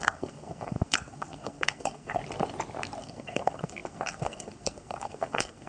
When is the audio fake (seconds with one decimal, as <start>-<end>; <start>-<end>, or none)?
0.0-2.2; 3.0-5.7